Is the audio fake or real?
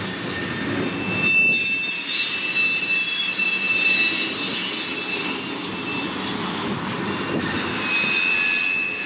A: real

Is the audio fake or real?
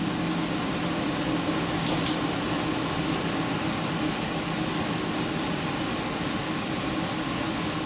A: real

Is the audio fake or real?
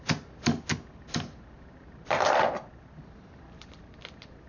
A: real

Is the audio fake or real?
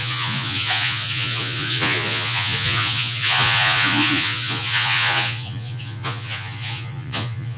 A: fake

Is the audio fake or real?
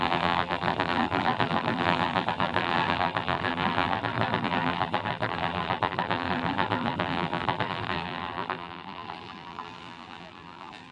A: fake